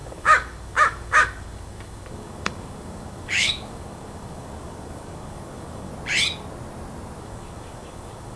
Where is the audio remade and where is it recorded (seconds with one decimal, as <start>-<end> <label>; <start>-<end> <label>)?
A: 0.0-5.9 remade; 5.9-7.2 recorded; 7.2-8.4 remade